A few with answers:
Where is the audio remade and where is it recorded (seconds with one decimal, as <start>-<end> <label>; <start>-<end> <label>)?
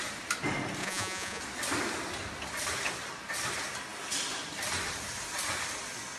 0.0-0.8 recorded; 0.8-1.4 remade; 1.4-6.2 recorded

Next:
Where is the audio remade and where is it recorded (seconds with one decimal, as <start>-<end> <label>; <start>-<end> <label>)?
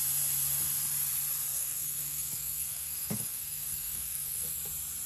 0.0-1.5 recorded; 1.5-4.6 remade; 4.6-5.1 recorded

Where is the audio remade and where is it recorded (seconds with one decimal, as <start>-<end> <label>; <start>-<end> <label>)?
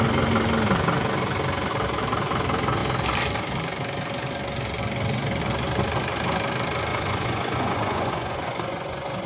0.0-6.9 recorded; 6.9-9.3 remade